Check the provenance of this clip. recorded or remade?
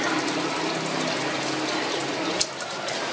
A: recorded